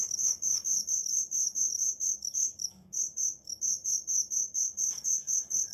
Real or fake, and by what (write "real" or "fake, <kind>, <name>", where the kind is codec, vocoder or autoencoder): fake, autoencoder, DAC-VAE